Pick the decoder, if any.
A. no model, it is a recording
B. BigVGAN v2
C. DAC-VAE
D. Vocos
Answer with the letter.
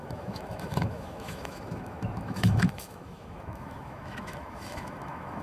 C